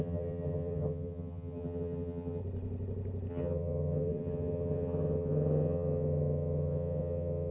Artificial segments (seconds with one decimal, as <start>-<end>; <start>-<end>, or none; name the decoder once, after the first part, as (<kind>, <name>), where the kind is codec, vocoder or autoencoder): 0.0-2.4 (vocoder, HiFi-GAN); 3.3-7.5